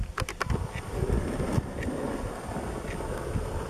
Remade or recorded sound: recorded